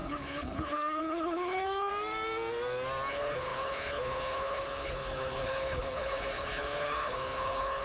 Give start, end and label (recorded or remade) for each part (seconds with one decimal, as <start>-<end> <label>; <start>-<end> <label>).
0.0-1.9 remade; 1.9-3.1 recorded; 3.1-7.8 remade